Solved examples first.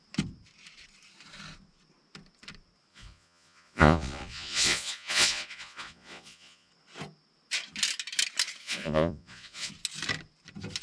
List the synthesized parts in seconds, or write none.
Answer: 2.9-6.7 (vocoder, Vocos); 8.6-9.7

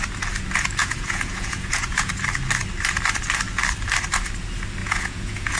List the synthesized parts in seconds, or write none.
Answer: 0.8-2.1 (vocoder, Vocos); 4.8-5.6

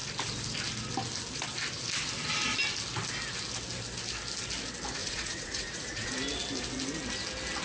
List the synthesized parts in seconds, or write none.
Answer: 5.0-6.1 (vocoder, Vocos)

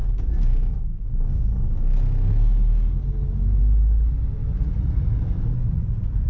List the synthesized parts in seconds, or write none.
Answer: 4.5-6.3 (vocoder, Vocos)

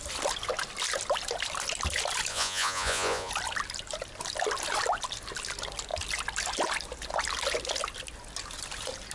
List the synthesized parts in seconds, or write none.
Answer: 2.3-3.3 (vocoder, Vocos)

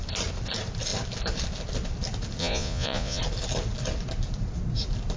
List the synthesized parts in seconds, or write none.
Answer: 2.4-3.2 (vocoder, Vocos)

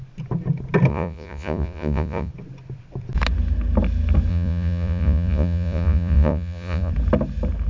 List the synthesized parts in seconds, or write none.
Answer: 0.9-2.3 (vocoder, Vocos); 4.3-6.9